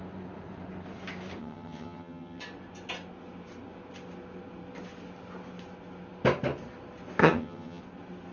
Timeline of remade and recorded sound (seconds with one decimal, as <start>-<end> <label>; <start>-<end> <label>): 0.0-1.4 recorded; 1.4-2.4 remade; 2.4-7.2 recorded; 7.2-7.8 remade; 7.8-8.3 recorded